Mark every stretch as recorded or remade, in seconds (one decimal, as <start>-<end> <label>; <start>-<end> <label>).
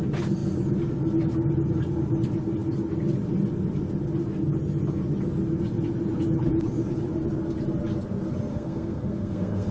0.0-8.5 recorded; 8.5-9.7 remade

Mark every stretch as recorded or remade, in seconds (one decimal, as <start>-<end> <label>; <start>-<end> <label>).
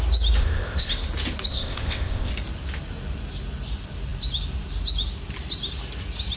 0.0-0.4 recorded; 0.4-0.9 remade; 0.9-1.5 recorded; 1.5-2.3 remade; 2.3-6.4 recorded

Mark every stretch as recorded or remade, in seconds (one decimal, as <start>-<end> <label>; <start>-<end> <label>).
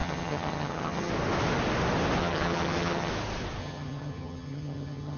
0.0-1.1 remade; 1.1-2.2 recorded; 2.2-3.1 remade; 3.1-3.6 recorded; 3.6-5.2 remade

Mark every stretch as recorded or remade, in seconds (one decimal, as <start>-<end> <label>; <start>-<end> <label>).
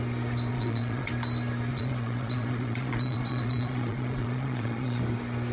0.0-0.5 recorded; 0.5-1.1 remade; 1.1-1.7 recorded; 1.7-5.0 remade; 5.0-5.5 recorded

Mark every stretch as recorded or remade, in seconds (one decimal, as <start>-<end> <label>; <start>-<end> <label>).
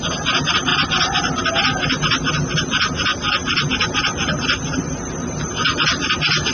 0.0-6.5 recorded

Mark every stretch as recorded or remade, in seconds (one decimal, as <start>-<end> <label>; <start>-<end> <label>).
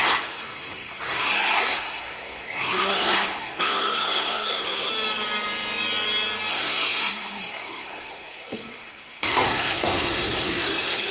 0.0-4.9 remade; 4.9-6.5 recorded; 6.5-11.1 remade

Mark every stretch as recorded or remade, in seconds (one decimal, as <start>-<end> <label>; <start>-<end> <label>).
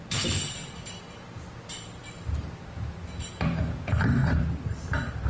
0.0-0.6 remade; 0.6-3.8 recorded; 3.8-5.3 remade